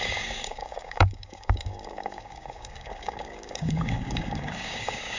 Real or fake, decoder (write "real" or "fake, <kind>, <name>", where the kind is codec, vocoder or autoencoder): fake, codec, DAC